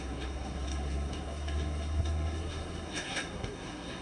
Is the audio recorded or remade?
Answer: remade